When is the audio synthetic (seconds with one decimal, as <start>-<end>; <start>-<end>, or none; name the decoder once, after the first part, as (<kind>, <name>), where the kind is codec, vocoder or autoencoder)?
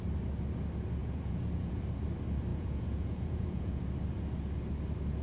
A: 1.0-1.8 (vocoder, Vocos); 2.5-3.8